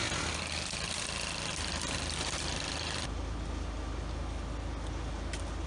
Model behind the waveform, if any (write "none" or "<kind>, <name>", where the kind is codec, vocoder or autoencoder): none